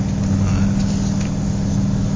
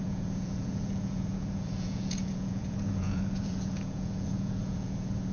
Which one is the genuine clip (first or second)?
first